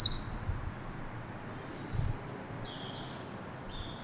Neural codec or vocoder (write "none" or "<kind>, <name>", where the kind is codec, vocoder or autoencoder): none